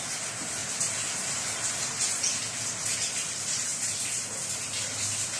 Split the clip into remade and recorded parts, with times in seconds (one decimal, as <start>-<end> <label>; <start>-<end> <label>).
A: 0.0-5.4 recorded